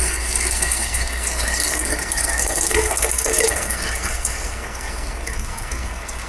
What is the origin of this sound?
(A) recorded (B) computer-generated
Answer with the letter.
B